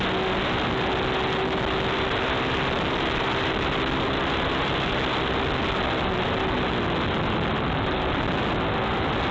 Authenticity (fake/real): real